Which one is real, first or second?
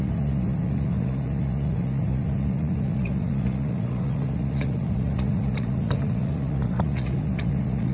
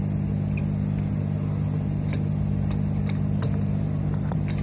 second